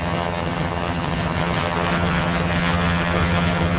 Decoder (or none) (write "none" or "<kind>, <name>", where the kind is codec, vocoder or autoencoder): vocoder, HiFi-GAN